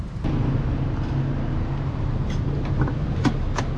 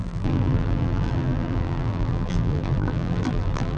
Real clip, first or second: first